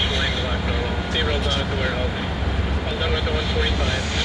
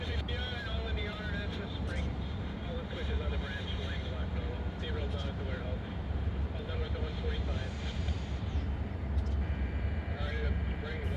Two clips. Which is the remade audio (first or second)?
second